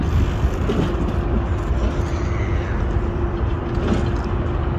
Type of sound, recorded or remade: recorded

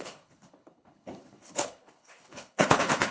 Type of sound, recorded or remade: remade